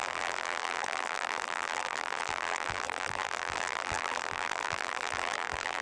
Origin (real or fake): fake